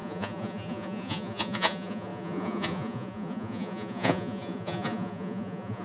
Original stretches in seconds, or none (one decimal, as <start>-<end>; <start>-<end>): none